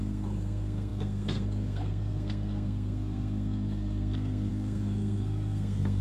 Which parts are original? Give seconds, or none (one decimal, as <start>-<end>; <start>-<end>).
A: none